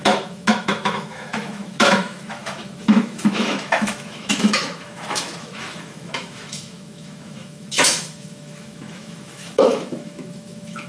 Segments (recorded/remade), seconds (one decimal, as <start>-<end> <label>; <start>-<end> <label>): 0.0-10.9 remade